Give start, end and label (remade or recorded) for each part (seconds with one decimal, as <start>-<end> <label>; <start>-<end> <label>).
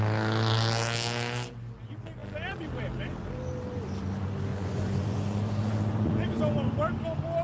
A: 0.0-4.5 recorded; 4.5-6.4 remade; 6.4-7.4 recorded